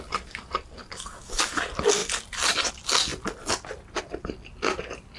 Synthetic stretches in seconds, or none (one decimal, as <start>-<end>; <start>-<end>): 0.8-1.6